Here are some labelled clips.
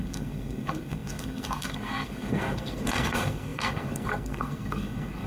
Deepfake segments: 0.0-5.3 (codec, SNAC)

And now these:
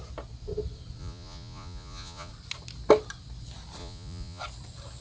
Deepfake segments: 1.0-2.3 (vocoder, Vocos); 3.8-4.4

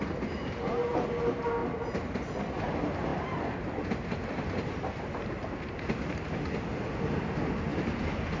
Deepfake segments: none